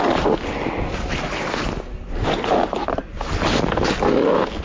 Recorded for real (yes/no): yes